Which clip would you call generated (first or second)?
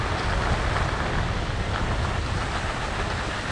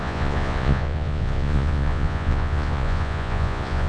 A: second